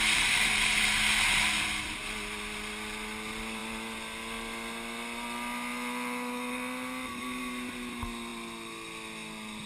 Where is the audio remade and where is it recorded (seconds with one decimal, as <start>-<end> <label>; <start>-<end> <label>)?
0.0-9.7 recorded